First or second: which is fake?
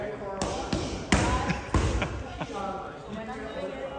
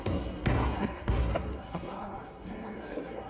second